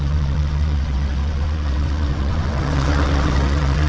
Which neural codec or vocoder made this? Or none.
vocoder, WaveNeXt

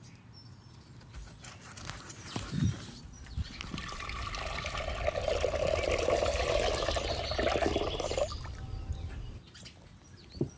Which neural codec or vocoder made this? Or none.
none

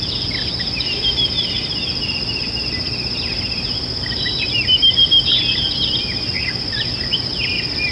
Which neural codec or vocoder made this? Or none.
none